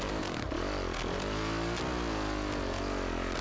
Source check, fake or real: real